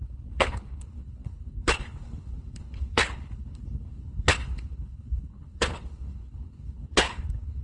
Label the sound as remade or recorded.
remade